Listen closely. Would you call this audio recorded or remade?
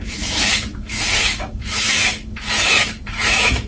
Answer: remade